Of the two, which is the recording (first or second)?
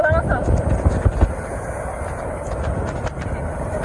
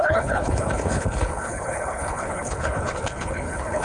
first